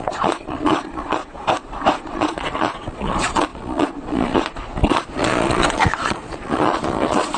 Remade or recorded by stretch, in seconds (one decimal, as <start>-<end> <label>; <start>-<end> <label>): 0.0-1.2 remade; 1.2-2.0 recorded; 2.0-7.4 remade